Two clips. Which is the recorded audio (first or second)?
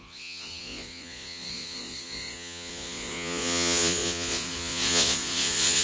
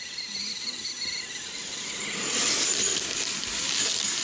second